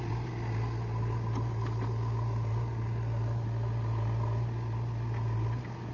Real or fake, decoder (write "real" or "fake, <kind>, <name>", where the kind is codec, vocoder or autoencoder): real